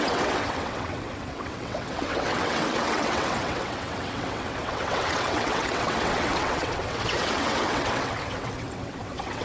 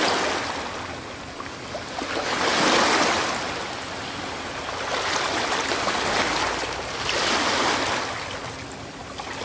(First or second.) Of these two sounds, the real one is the second